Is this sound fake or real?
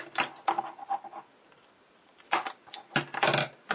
real